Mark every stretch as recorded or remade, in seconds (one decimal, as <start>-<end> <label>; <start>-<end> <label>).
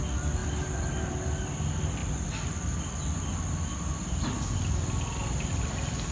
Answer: 0.0-6.1 recorded